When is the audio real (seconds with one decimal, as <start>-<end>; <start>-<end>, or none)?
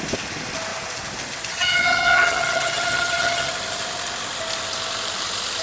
0.0-1.5; 3.5-5.6